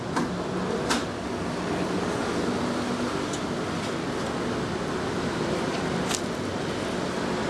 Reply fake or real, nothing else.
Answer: real